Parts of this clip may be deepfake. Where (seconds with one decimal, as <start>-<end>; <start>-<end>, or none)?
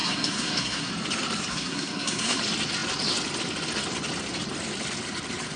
0.0-0.9; 1.5-2.4